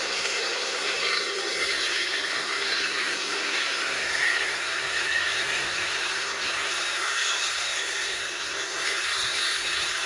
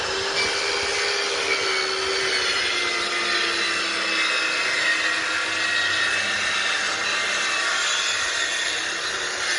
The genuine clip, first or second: second